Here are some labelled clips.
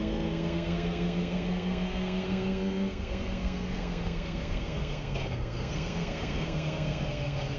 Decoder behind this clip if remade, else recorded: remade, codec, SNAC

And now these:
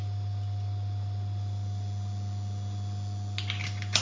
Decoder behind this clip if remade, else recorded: recorded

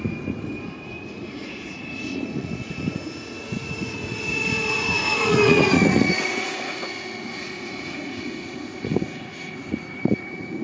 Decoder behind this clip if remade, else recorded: remade, vocoder, Vocos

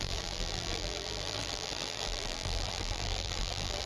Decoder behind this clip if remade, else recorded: remade, vocoder, BigVGAN v2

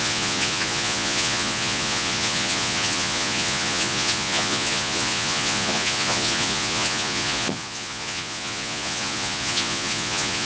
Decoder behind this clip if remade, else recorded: remade, vocoder, Vocos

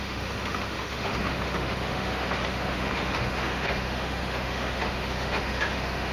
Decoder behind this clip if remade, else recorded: remade, autoencoder, DAC-VAE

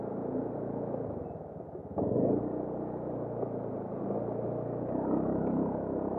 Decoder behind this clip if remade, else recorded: recorded